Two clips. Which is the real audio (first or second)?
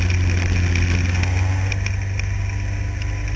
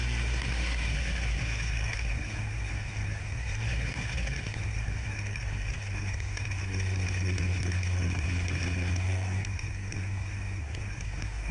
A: first